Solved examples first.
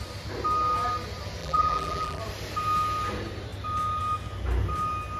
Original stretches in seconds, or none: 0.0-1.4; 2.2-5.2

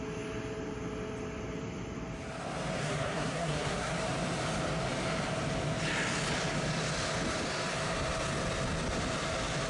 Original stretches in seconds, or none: 0.0-2.8; 3.9-9.7

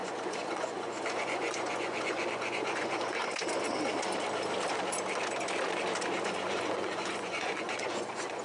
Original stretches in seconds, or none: 3.2-6.2

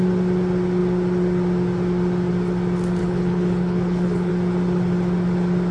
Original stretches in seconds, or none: 0.0-3.0; 4.3-5.7

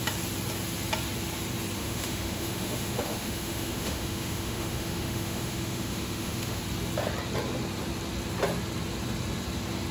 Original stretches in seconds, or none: 0.0-1.8; 6.6-9.9

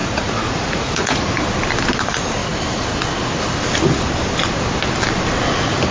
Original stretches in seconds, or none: 1.2-5.9